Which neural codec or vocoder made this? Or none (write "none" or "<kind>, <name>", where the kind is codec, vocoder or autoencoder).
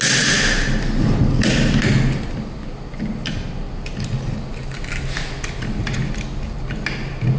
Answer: none